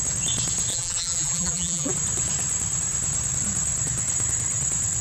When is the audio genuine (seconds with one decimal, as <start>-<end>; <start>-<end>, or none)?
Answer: 0.0-0.7; 1.9-5.0

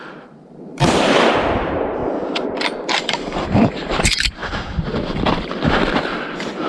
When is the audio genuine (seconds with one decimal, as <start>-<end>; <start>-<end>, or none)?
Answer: 4.4-6.7

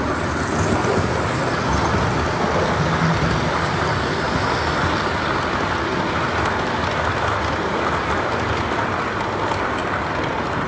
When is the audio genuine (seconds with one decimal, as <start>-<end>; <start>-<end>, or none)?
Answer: 0.0-10.7

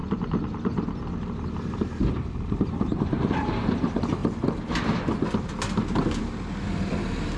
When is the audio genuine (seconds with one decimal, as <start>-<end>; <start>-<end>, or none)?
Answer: 0.0-2.1; 4.2-6.2